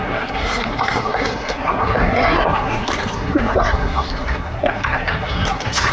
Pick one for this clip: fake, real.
fake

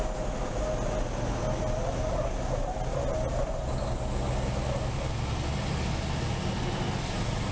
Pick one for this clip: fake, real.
real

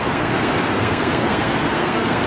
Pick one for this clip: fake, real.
fake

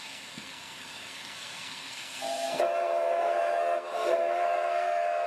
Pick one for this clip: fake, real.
fake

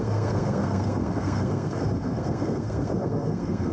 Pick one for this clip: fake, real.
fake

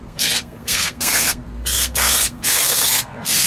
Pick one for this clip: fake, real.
fake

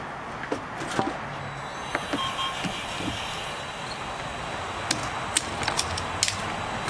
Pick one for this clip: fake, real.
real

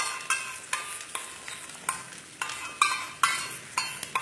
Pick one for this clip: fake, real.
real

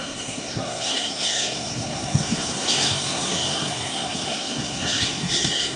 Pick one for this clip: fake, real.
fake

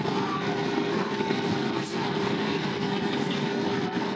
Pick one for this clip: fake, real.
fake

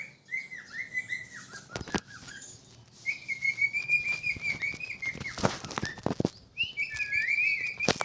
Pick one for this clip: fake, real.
real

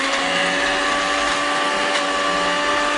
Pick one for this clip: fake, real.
real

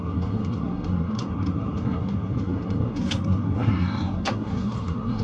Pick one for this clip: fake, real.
fake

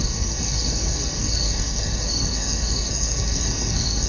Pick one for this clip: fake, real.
fake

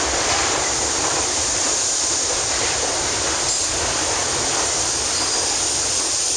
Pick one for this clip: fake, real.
real